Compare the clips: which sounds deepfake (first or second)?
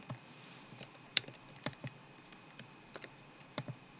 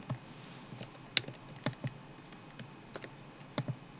first